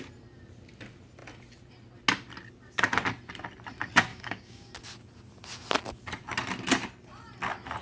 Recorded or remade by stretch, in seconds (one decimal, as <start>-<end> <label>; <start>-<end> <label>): 0.0-4.1 recorded; 4.1-4.7 remade; 4.7-7.8 recorded